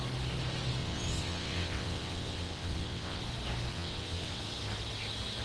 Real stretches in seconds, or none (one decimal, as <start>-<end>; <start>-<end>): 0.0-0.8; 3.2-3.7; 4.4-5.4